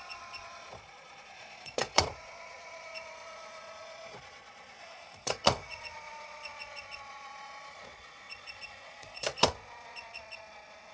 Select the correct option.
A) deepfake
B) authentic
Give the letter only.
A